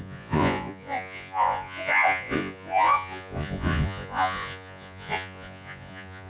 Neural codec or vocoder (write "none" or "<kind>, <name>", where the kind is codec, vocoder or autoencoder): vocoder, Vocos